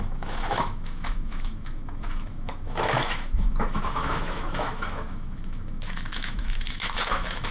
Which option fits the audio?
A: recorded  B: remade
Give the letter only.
B